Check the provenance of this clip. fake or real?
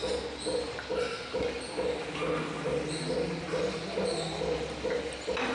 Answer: real